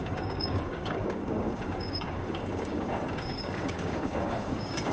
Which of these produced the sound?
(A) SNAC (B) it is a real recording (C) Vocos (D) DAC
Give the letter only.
D